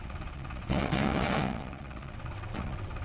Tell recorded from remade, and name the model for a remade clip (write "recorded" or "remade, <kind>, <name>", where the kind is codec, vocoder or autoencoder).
remade, vocoder, WaveNeXt